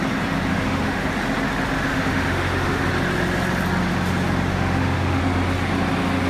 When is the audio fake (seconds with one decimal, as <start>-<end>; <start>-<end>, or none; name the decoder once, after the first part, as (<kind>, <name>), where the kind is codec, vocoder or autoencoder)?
0.5-1.1 (autoencoder, DAC-VAE); 1.9-2.9; 4.5-5.2

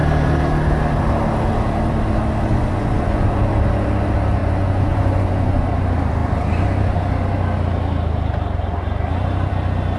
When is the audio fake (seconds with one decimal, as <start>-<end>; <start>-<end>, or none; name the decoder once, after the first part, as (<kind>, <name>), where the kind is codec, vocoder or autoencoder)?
2.5-3.5 (vocoder, Vocos); 4.4-5.7

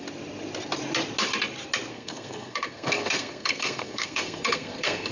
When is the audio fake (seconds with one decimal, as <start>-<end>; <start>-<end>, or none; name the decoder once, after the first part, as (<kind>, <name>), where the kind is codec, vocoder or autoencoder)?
1.9-5.1 (codec, SNAC)

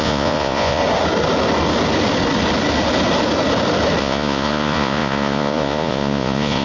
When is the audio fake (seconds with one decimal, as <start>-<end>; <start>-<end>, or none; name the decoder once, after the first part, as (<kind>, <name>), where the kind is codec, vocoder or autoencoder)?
0.0-0.8 (vocoder, Vocos); 4.0-6.6

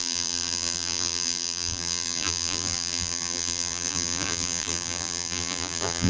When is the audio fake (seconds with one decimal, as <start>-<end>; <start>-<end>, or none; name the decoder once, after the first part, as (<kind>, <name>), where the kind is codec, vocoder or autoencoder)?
0.0-6.1 (vocoder, BigVGAN v2)

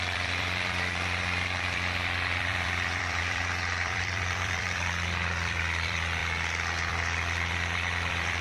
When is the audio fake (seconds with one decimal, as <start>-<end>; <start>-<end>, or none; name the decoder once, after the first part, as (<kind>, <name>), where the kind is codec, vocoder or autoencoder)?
0.0-6.2 (vocoder, BigVGAN v2); 6.9-8.4

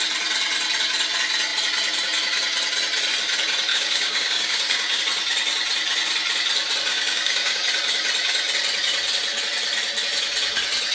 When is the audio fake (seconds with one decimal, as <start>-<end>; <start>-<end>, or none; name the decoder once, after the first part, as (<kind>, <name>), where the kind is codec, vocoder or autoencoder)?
3.7-5.0 (codec, DAC); 6.9-7.6

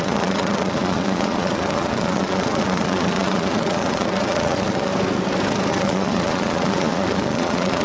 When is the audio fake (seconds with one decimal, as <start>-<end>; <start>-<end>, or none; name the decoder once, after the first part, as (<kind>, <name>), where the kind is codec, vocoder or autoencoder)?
0.0-4.9 (vocoder, Vocos); 5.7-7.8